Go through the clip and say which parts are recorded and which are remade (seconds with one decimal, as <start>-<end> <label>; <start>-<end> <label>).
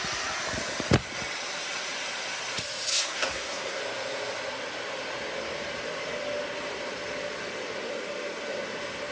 0.0-2.9 recorded; 2.9-3.8 remade; 3.8-9.1 recorded